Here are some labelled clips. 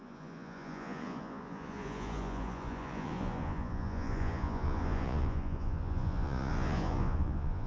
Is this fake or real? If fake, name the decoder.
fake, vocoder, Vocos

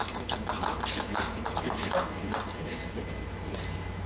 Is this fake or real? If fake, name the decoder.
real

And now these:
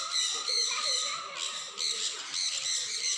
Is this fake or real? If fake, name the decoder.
real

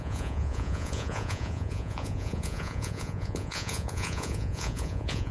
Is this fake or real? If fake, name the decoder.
fake, vocoder, Vocos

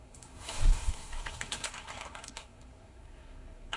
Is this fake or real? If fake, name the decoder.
fake, codec, SNAC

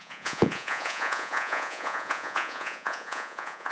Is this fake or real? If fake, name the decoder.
fake, vocoder, Vocos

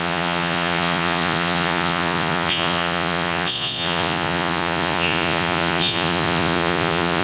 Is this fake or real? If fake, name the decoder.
fake, vocoder, Vocos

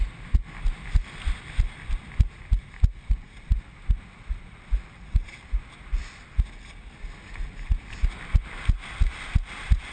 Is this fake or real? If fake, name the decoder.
real